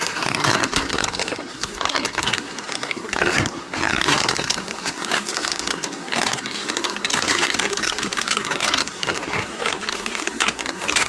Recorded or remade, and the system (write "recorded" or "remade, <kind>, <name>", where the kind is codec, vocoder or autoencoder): remade, codec, SNAC